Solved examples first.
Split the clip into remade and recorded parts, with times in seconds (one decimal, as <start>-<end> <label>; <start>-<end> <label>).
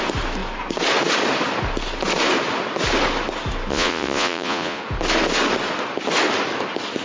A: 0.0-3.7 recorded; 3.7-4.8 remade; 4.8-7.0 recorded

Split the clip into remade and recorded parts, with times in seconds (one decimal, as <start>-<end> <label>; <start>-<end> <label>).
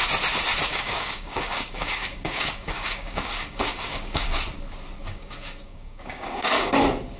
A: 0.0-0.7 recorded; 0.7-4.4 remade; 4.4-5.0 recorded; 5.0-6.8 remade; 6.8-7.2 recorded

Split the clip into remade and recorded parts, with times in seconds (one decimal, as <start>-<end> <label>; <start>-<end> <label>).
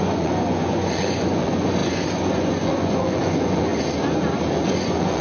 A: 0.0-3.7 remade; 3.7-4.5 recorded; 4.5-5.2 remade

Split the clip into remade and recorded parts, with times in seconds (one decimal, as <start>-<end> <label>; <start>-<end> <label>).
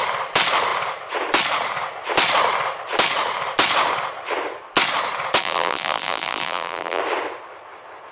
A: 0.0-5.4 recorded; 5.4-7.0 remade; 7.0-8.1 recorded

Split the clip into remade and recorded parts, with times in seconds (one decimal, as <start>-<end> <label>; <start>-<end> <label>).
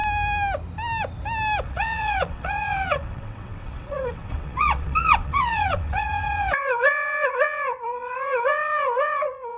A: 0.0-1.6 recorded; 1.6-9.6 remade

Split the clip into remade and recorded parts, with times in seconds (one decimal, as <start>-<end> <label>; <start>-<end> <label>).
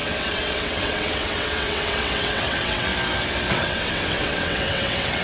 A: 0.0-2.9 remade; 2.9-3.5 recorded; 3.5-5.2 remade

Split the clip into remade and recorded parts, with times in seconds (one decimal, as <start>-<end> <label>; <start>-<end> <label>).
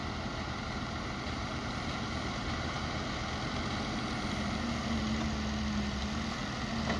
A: 0.0-2.8 remade; 2.8-7.0 recorded